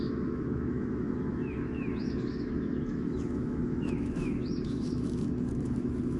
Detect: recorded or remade remade